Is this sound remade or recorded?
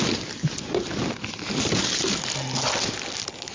recorded